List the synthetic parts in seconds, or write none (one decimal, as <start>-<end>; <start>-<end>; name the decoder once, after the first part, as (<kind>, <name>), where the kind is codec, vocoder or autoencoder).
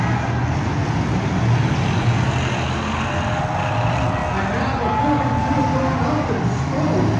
none